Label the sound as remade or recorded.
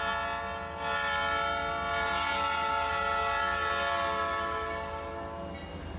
recorded